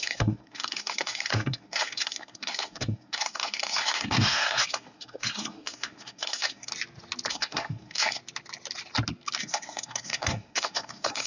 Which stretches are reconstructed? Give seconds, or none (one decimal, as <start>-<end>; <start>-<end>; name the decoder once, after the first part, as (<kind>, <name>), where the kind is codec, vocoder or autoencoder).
0.0-6.7 (codec, SNAC); 7.3-8.2; 9.4-11.3